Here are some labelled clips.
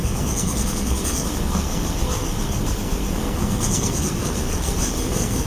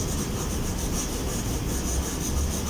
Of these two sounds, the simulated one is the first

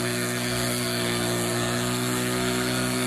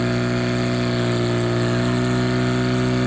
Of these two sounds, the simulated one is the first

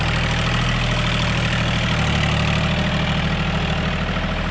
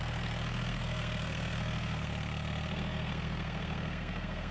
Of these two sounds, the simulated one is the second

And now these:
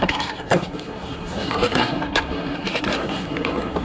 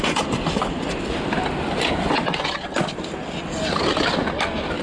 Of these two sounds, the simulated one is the first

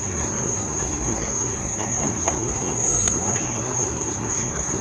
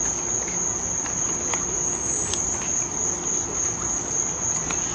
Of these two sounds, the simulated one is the first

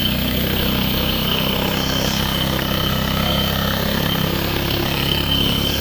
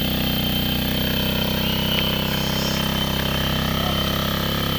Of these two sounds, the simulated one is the first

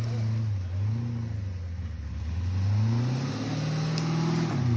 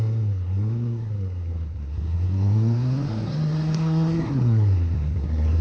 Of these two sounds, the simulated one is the second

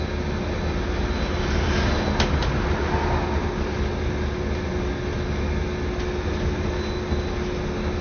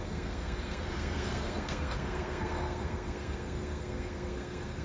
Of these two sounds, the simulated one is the second